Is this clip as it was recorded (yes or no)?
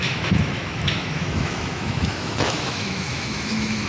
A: no